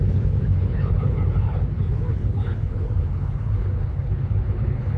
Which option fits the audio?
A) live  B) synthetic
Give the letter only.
B